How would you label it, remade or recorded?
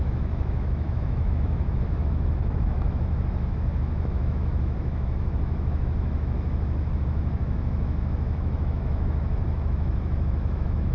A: remade